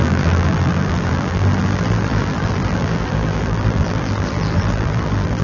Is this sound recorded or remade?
remade